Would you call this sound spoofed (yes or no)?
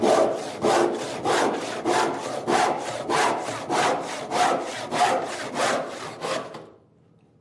no